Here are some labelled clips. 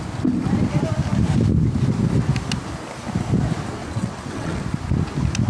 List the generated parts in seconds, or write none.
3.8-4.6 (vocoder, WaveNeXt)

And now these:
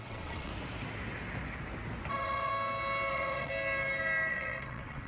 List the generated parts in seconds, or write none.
0.0-0.5 (vocoder, WaveNeXt); 2.1-2.5; 3.1-3.5; 4.3-5.1

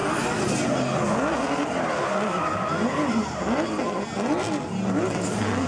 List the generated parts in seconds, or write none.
none

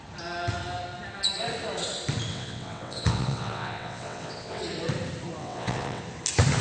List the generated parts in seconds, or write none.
2.3-4.6 (vocoder, WaveNeXt); 5.4-6.0

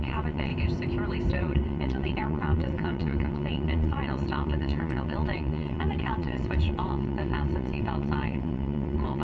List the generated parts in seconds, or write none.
0.0-0.5 (vocoder, WaveNeXt); 1.3-9.2